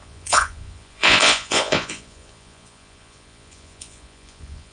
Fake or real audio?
fake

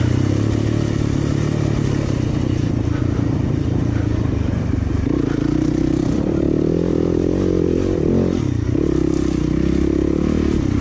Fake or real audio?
real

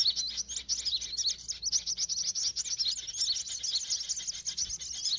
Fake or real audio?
real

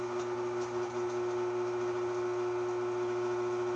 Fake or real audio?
real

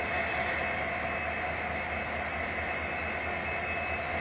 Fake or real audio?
real